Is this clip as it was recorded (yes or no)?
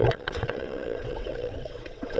no